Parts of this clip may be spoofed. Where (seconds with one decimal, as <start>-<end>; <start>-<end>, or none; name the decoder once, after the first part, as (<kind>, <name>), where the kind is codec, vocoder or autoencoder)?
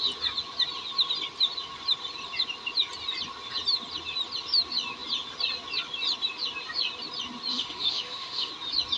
7.5-8.5 (autoencoder, DAC-VAE)